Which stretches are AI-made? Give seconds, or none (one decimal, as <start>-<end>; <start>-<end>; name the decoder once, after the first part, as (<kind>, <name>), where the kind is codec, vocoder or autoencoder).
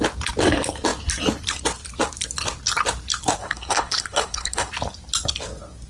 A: 3.4-4.7 (codec, HILCodec)